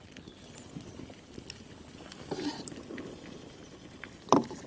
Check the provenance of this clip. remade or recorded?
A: remade